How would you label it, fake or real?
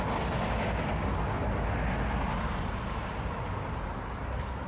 real